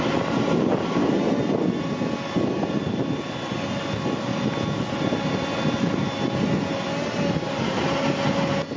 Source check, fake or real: real